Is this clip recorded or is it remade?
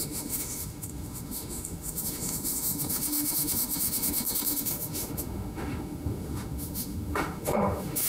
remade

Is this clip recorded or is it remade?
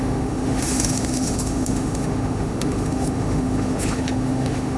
remade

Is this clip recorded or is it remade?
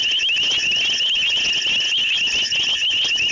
recorded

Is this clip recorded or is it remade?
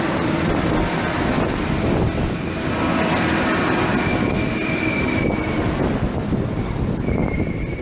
recorded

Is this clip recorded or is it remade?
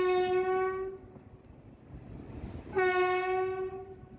recorded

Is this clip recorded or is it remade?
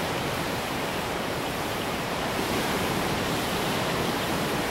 remade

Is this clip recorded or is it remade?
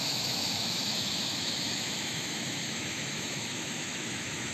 remade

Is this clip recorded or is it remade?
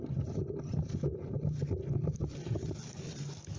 recorded